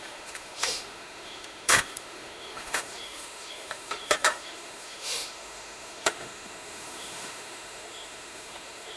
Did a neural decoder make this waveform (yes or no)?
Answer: yes